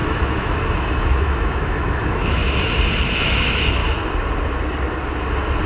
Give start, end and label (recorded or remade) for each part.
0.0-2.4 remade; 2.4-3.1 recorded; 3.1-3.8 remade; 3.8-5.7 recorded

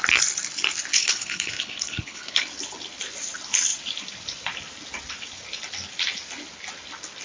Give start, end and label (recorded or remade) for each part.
0.0-0.9 recorded; 0.9-2.4 remade; 2.4-7.2 recorded

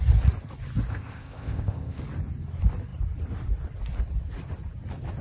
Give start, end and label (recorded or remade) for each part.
0.0-0.9 recorded; 0.9-2.0 remade; 2.0-5.2 recorded